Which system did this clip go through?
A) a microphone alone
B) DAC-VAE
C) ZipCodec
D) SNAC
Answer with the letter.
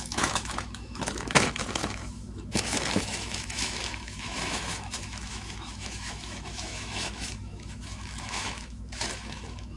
B